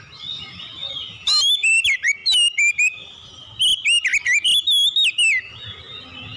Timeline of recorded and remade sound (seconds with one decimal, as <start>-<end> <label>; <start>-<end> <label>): 0.0-6.4 recorded